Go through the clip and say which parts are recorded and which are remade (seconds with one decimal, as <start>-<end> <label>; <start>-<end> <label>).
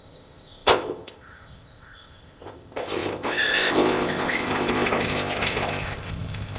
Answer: 0.0-6.6 remade